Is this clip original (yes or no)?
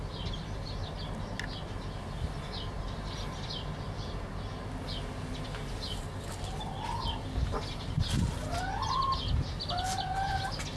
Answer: yes